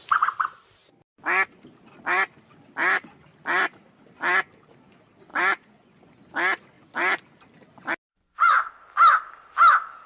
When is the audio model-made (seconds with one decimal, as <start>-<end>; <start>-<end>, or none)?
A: 5.3-6.1; 8.1-8.7